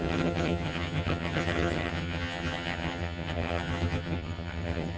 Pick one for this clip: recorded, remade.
remade